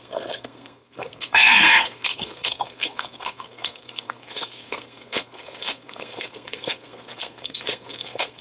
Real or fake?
fake